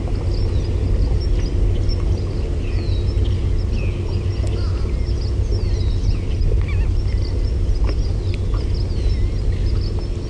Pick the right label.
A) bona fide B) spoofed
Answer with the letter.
A